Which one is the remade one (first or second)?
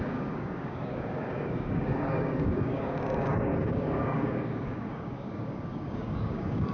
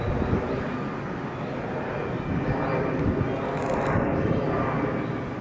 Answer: first